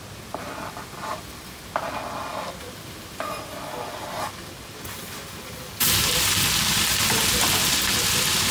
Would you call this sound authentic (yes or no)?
yes